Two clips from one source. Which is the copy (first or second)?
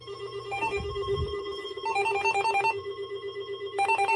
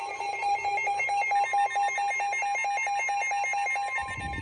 first